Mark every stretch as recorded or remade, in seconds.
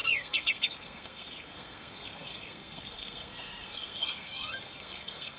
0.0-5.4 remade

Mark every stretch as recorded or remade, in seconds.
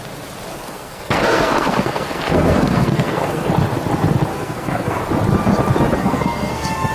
0.0-0.5 recorded; 0.5-3.5 remade; 3.5-4.3 recorded; 4.3-5.0 remade; 5.0-6.0 recorded; 6.0-6.9 remade